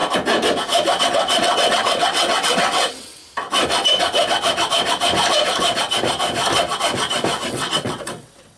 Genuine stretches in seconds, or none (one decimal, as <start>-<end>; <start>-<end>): 0.0-1.0; 3.2-7.5